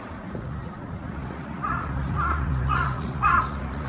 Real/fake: fake